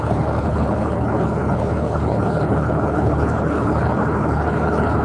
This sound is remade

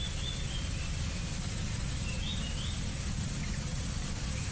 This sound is recorded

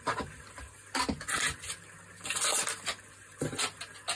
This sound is recorded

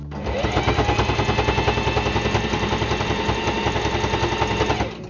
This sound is recorded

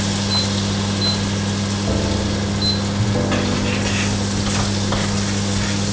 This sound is recorded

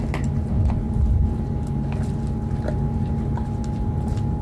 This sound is recorded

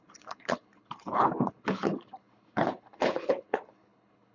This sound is remade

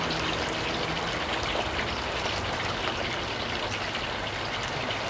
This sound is recorded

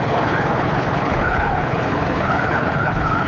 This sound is remade